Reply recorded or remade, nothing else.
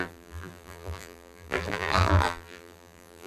remade